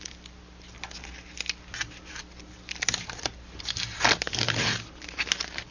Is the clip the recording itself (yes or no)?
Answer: yes